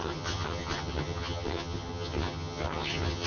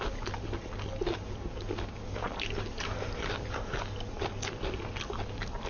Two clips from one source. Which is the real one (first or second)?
second